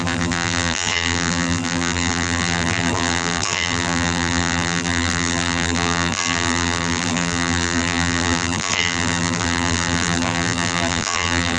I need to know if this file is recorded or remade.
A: remade